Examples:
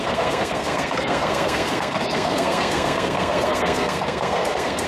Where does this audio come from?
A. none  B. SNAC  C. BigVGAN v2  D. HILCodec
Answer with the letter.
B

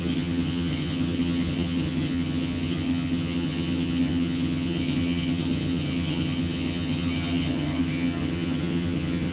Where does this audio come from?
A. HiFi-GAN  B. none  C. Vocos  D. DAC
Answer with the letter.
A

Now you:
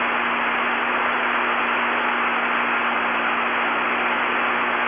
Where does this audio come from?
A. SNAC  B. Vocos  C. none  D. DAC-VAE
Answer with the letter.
C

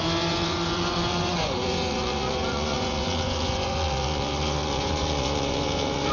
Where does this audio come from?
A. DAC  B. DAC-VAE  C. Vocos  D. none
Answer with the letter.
C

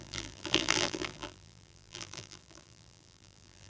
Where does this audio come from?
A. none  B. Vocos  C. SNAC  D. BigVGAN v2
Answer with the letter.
D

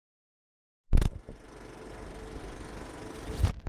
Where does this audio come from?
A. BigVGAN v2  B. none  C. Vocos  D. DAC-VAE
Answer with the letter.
B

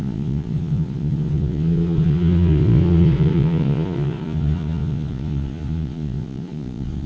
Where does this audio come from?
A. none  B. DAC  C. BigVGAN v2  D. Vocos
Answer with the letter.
D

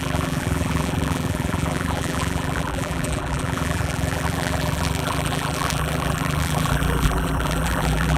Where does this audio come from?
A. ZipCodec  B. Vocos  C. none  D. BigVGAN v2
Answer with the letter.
D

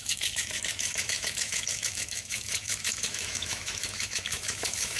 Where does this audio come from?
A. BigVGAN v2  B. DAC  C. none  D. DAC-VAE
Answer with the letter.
D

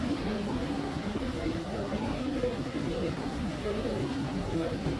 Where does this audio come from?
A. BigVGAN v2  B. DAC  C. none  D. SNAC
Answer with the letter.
D